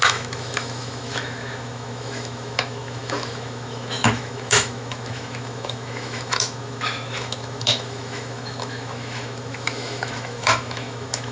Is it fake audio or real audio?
fake